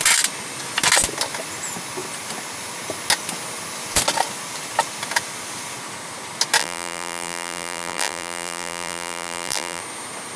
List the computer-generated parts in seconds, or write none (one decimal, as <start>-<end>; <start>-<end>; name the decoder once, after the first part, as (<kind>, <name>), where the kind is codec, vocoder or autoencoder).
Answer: 6.6-9.8 (vocoder, BigVGAN v2)